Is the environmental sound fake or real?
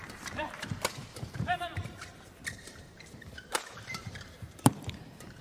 fake